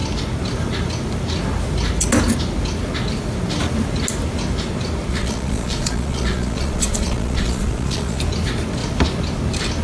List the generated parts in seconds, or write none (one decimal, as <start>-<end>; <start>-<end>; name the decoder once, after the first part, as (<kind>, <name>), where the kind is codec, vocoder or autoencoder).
5.1-8.2 (vocoder, Vocos)